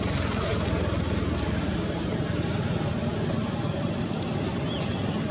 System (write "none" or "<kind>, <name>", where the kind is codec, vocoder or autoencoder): none